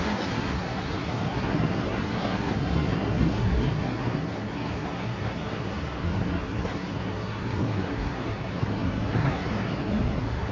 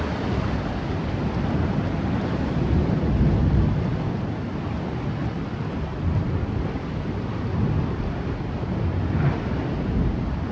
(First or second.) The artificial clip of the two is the first